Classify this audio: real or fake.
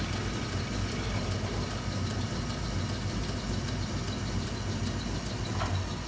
real